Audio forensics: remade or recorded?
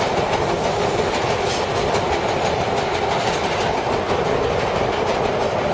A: recorded